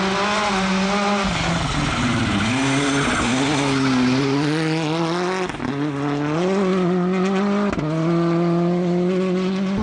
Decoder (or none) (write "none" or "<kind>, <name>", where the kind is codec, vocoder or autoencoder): none